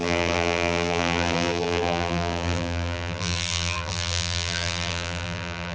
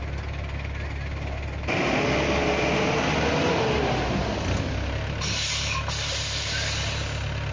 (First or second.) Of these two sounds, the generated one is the first